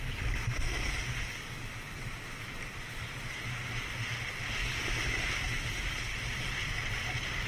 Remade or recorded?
recorded